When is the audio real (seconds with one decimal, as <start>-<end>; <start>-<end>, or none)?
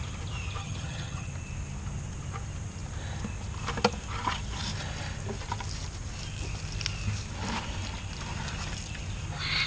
0.0-0.6; 1.3-9.7